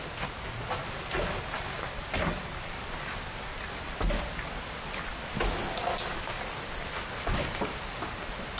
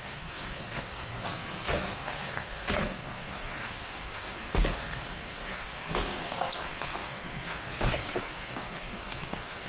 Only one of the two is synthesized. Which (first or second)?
second